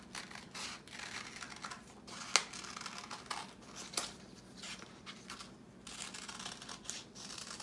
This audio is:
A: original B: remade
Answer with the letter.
A